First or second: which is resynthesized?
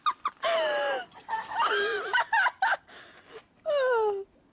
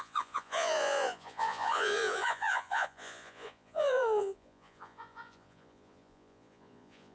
second